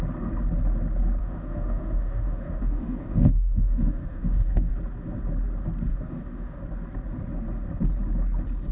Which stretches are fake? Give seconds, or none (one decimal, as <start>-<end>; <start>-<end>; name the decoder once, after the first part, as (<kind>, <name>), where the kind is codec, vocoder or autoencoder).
1.2-4.7 (autoencoder, DAC-VAE); 5.9-6.6

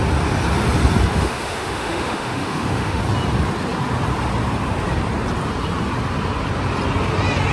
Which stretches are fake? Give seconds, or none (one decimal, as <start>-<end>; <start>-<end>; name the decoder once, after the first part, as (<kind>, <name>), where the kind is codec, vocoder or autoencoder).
1.1-3.0 (autoencoder, DAC-VAE)

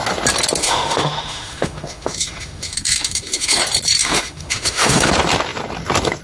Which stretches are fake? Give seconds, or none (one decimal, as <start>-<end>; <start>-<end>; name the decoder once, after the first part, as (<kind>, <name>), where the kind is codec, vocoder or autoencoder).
0.6-3.6 (autoencoder, DAC-VAE); 4.0-5.1

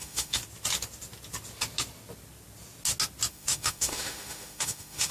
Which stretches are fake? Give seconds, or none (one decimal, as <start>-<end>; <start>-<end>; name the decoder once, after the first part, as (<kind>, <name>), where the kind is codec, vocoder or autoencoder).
0.0-0.4 (autoencoder, DAC-VAE); 3.3-5.1

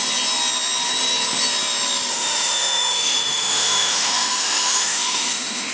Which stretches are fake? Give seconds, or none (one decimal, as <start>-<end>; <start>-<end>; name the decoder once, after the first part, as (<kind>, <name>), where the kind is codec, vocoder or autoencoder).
2.1-5.7 (autoencoder, DAC-VAE)